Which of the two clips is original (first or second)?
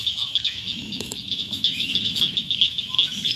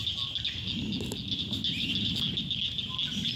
second